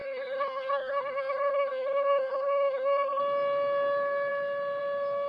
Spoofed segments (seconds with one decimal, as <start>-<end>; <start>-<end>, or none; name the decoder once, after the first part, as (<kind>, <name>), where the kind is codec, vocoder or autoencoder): 0.0-3.2 (codec, SNAC)